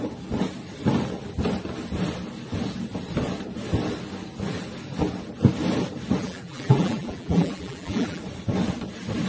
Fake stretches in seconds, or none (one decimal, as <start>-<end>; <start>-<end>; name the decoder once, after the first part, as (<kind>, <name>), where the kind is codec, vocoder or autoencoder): 6.2-8.2 (vocoder, BigVGAN v2)